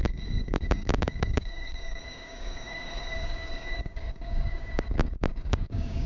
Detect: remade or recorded remade